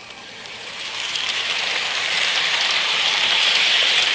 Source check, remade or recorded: remade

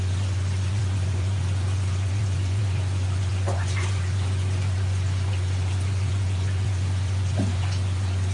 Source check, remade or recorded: remade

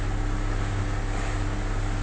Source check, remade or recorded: recorded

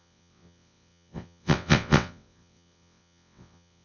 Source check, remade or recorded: remade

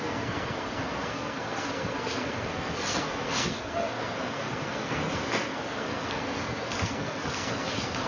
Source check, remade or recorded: remade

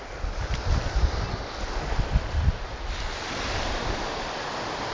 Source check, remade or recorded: recorded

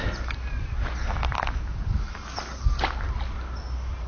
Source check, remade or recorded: recorded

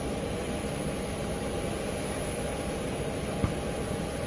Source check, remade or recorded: recorded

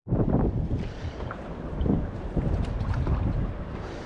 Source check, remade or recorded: remade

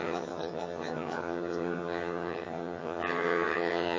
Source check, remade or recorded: remade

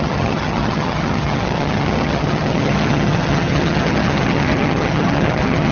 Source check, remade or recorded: remade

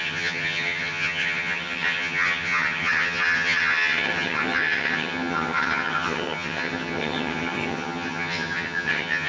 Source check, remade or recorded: remade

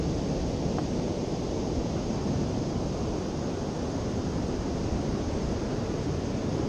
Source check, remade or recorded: recorded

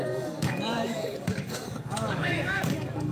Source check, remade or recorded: remade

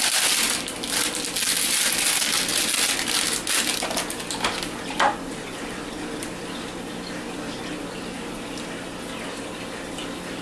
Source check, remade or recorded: recorded